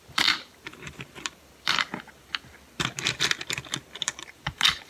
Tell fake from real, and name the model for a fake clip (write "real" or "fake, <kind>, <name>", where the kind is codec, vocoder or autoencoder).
fake, vocoder, BigVGAN v2